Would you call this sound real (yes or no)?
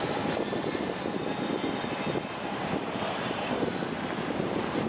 yes